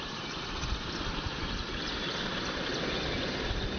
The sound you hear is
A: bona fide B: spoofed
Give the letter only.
A